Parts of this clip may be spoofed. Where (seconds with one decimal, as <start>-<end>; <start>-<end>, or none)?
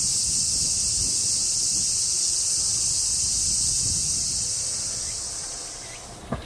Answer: none